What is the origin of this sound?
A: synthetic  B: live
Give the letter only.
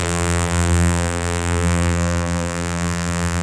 A